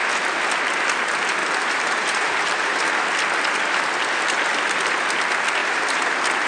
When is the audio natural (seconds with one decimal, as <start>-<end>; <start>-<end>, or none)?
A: 0.0-1.4; 2.5-5.6